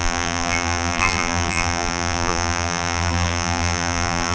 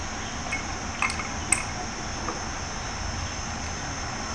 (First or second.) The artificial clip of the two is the first